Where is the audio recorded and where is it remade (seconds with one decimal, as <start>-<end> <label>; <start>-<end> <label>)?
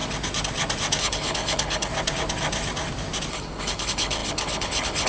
0.0-1.0 recorded; 1.0-1.9 remade; 1.9-3.3 recorded; 3.3-5.1 remade